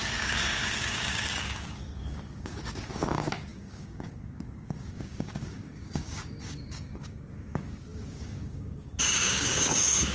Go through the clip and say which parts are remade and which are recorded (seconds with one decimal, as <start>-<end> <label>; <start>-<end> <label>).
0.0-10.1 remade